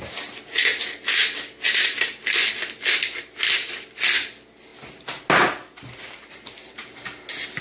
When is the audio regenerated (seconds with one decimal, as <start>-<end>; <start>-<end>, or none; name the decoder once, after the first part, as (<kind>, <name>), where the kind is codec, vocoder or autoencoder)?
none